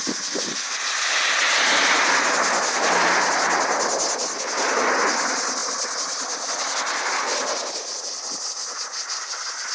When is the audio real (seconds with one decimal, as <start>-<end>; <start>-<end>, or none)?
0.0-9.7